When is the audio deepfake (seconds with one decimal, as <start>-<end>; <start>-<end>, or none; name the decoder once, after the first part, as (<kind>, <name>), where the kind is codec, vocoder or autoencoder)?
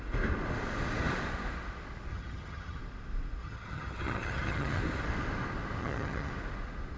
2.1-2.8 (vocoder, HiFi-GAN); 3.4-4.8; 5.8-6.3